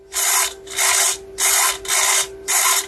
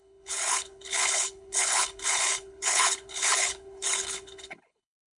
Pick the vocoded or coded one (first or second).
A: second